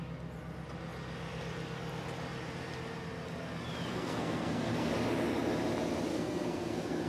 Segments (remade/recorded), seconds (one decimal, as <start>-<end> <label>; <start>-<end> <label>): 0.0-3.9 recorded; 3.9-4.9 remade; 4.9-6.1 recorded; 6.1-7.1 remade